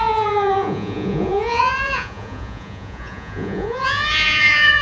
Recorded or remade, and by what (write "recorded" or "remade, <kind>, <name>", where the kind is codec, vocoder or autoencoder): remade, vocoder, Vocos